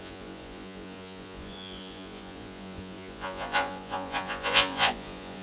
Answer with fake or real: fake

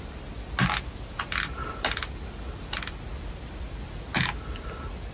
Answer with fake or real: real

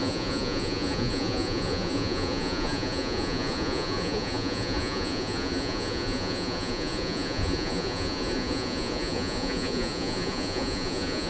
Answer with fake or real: fake